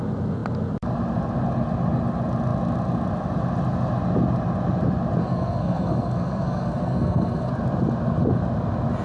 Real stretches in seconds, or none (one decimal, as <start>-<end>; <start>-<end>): 0.0-5.2; 7.5-9.0